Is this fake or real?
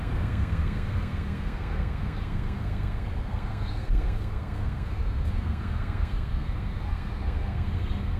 fake